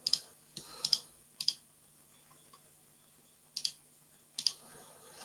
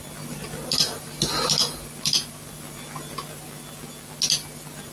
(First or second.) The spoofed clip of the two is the first